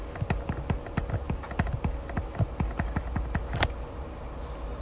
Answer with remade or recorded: recorded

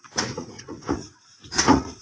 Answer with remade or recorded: remade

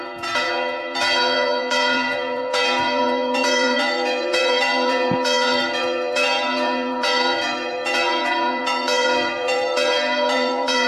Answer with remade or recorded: remade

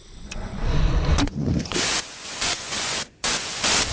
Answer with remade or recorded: remade